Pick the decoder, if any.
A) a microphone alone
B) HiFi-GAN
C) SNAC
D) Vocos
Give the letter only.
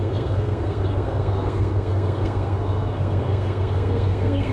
C